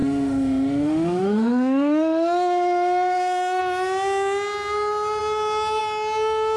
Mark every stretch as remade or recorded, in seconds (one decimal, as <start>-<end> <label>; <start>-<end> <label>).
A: 0.0-3.6 remade; 3.6-6.6 recorded